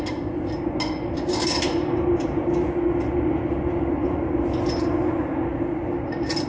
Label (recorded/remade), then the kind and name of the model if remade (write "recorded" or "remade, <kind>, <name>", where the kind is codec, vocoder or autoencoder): recorded